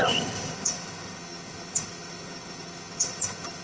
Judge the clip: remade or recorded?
remade